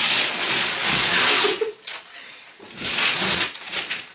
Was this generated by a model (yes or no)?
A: yes